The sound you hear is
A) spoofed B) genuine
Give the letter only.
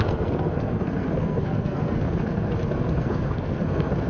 A